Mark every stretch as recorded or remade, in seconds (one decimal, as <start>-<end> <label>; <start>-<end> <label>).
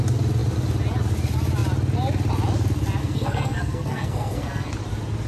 0.0-3.0 recorded; 3.0-4.7 remade; 4.7-5.3 recorded